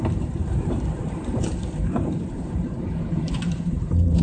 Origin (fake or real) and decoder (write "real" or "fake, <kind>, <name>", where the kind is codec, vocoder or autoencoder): fake, vocoder, BigVGAN v2